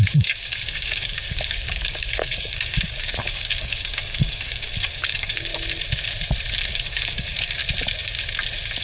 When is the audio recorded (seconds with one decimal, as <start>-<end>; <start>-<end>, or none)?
5.5-6.7; 7.6-8.8